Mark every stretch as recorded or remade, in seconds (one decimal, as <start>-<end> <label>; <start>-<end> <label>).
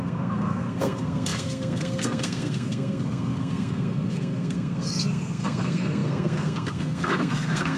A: 0.0-7.8 remade